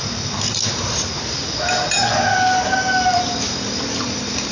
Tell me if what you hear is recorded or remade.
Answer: recorded